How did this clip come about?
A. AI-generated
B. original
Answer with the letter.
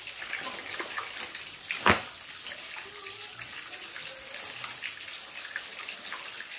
B